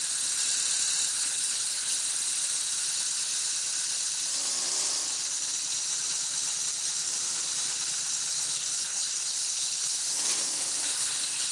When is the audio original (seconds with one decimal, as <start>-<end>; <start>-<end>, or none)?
0.0-1.1; 2.0-8.3